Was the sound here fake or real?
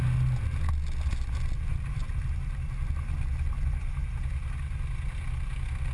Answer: real